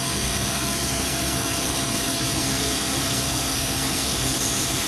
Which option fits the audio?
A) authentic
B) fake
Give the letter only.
B